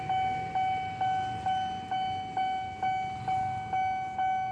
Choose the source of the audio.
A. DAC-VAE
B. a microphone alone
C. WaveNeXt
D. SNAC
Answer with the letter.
B